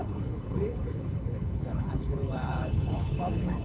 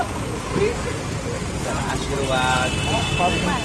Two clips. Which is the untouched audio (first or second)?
second